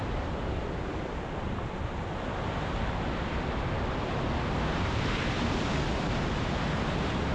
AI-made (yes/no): no